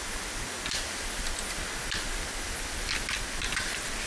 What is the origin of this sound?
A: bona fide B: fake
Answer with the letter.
A